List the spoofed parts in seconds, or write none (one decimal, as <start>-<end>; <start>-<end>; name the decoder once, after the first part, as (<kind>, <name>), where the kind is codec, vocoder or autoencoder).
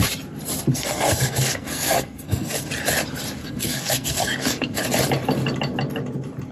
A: 0.7-2.7 (codec, SNAC); 3.4-4.8